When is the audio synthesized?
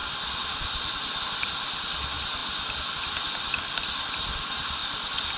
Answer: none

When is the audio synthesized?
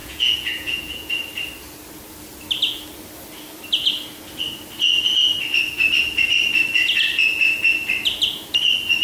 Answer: 0.0-1.1 (vocoder, Vocos)